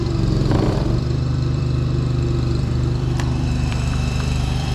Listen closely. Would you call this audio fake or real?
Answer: fake